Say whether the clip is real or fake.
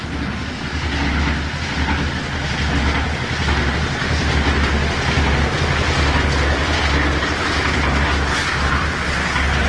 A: real